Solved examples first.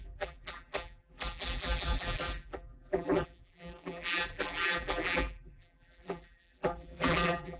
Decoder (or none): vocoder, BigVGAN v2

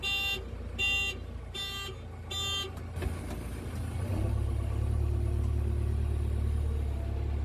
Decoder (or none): none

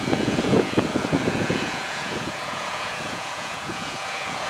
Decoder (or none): vocoder, Vocos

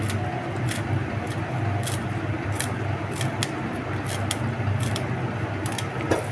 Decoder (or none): none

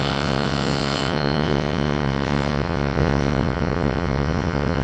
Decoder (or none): vocoder, WaveNeXt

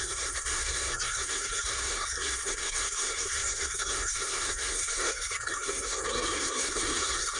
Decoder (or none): codec, SNAC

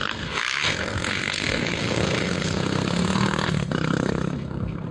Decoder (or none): codec, SNAC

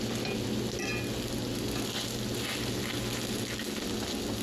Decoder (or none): none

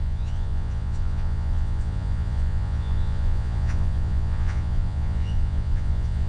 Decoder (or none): vocoder, Vocos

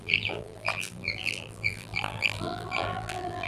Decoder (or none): vocoder, BigVGAN v2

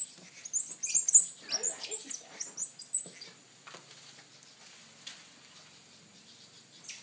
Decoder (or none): none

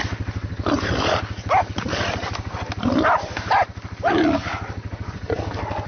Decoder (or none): none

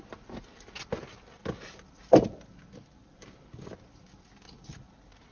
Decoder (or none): none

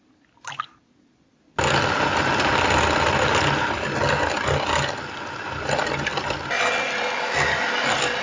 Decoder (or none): none